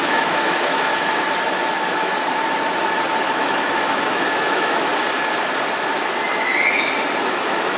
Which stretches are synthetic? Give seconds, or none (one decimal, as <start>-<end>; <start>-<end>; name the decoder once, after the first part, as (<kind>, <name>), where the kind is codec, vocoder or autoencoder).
0.0-0.9 (autoencoder, DAC-VAE); 1.7-2.1; 3.2-4.9; 7.2-7.8